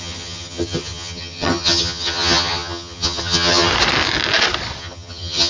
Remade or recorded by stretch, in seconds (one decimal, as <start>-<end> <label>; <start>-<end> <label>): 0.0-3.7 remade; 3.7-4.8 recorded; 4.8-5.5 remade